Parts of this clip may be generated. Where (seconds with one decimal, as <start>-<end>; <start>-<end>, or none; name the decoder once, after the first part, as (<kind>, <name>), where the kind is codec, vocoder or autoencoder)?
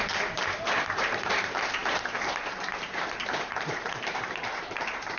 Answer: 0.0-5.2 (vocoder, BigVGAN v2)